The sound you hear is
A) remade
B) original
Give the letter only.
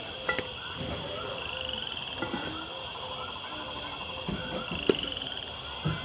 B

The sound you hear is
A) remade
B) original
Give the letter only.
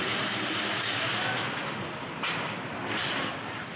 B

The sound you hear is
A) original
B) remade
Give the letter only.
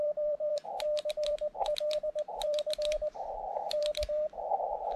B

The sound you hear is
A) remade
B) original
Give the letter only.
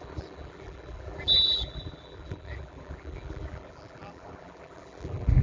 A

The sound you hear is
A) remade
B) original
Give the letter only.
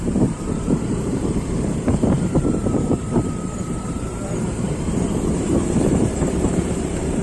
A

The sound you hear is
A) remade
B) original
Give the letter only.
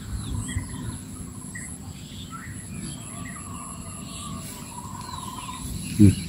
B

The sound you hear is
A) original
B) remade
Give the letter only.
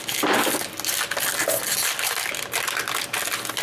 A